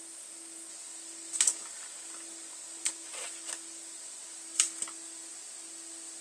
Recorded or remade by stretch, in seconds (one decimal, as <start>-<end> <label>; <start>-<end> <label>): 0.0-6.2 recorded